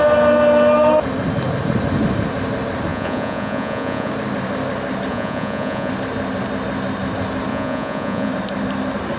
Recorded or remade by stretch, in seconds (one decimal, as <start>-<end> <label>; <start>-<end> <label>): 0.0-2.9 recorded; 2.9-4.1 remade; 4.1-5.1 recorded; 5.1-5.9 remade; 5.9-7.5 recorded; 7.5-8.3 remade; 8.3-9.2 recorded

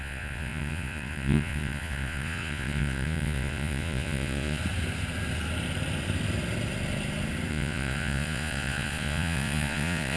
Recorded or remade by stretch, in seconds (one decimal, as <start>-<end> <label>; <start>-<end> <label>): 0.0-4.6 remade; 4.6-7.5 recorded; 7.5-10.2 remade

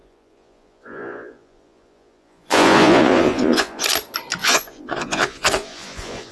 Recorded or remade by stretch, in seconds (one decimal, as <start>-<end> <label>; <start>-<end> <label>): 0.0-3.8 remade; 3.8-4.4 recorded; 4.4-6.3 remade